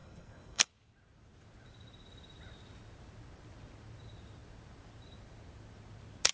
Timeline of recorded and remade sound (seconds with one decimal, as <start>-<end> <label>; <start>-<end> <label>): 0.0-0.7 remade; 0.7-6.3 recorded